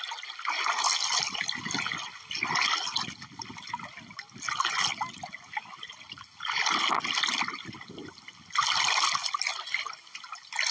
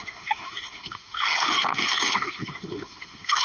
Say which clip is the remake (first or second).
second